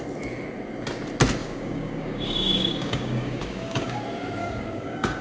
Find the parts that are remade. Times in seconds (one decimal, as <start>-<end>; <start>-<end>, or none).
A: 1.4-4.0; 4.4-5.2